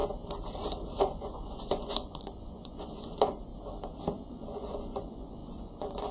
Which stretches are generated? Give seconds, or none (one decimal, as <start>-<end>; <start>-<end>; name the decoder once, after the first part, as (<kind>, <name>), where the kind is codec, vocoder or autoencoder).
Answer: 1.0-3.5 (vocoder, Vocos); 4.3-6.1